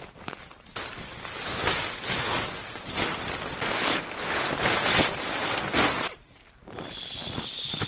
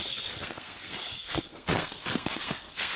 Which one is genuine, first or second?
first